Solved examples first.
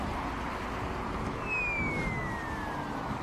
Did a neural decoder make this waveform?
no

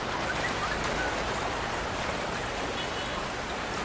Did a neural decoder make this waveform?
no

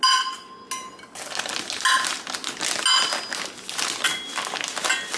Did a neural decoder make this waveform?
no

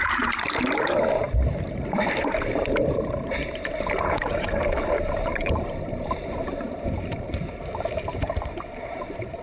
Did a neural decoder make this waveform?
yes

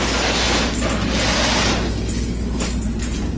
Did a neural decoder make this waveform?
no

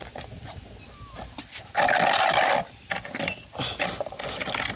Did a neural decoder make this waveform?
no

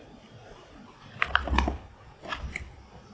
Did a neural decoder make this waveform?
no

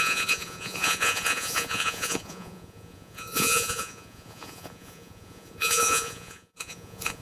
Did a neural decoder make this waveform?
yes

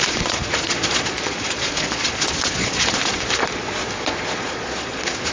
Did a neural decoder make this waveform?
yes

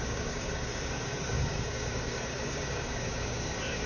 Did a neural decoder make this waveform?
yes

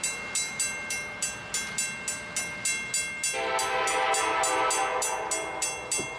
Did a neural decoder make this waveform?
no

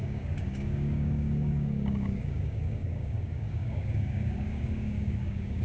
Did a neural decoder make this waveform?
yes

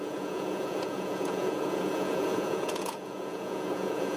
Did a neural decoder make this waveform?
yes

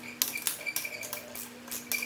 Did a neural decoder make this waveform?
no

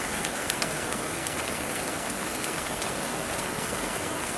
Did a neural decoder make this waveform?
yes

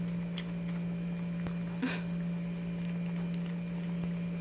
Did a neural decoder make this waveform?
no